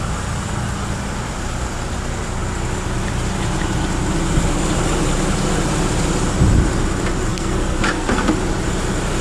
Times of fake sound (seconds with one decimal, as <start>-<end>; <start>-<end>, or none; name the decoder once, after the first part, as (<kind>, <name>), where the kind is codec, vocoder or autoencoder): 7.3-8.3 (codec, SNAC)